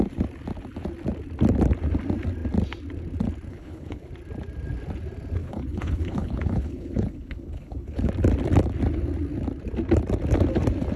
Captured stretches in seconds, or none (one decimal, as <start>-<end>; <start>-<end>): 0.0-3.5; 4.1-5.4; 8.1-11.0